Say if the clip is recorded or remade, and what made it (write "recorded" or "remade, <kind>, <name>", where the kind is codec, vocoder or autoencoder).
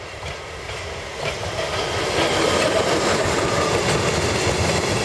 recorded